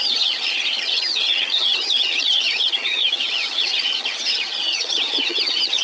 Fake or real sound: fake